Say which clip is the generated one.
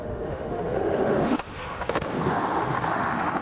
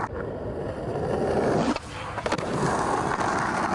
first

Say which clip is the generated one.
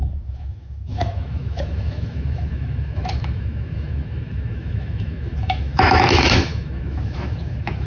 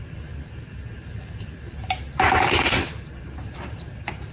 first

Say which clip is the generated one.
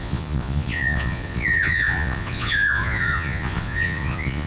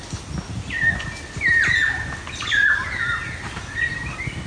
first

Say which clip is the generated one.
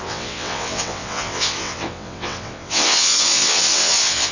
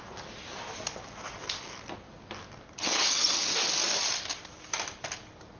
first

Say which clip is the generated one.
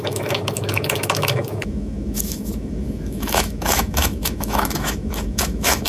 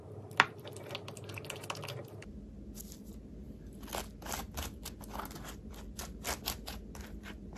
first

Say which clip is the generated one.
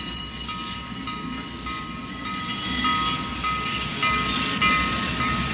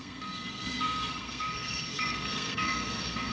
second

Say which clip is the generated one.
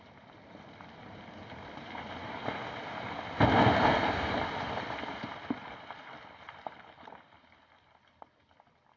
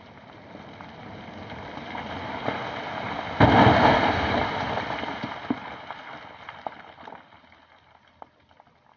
first